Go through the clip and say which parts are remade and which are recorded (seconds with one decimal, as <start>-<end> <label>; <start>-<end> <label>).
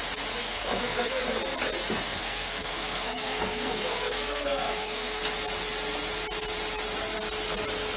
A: 0.0-0.4 recorded; 0.4-1.2 remade; 1.2-2.1 recorded; 2.1-5.2 remade; 5.2-8.0 recorded